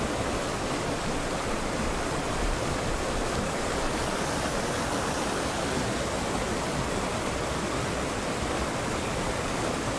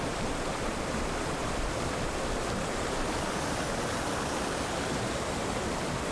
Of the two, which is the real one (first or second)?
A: first